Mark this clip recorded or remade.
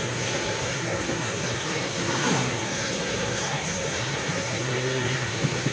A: remade